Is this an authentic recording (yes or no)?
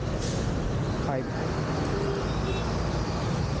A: yes